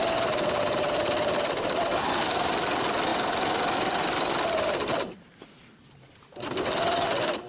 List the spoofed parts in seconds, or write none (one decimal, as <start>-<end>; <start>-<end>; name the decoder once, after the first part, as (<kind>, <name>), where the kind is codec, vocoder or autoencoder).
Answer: none